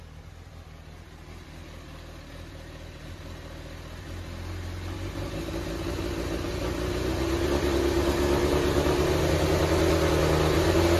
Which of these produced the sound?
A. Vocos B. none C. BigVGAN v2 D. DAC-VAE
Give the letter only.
B